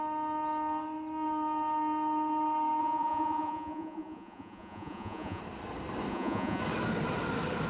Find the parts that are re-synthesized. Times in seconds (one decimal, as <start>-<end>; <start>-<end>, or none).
2.8-5.4; 6.1-6.6